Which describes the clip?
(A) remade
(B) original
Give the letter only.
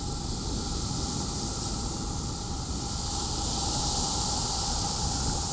B